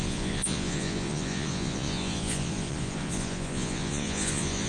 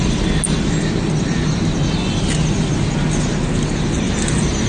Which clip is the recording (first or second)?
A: second